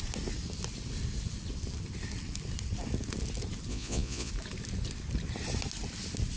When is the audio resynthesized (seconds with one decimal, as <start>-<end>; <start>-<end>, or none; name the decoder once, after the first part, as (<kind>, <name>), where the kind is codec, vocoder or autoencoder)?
3.7-4.3 (vocoder, Vocos)